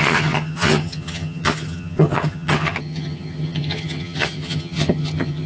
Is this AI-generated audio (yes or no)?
yes